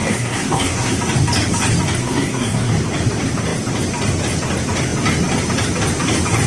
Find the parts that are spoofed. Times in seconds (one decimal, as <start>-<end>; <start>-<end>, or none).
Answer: 0.0-1.0; 2.0-2.7